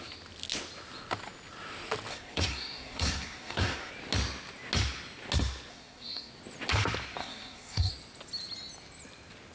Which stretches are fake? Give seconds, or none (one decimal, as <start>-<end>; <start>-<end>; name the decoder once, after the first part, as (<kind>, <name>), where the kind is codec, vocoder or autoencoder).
2.1-3.9 (codec, SNAC); 5.7-6.3; 7.2-7.9